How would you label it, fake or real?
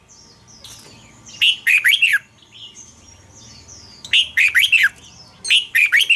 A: real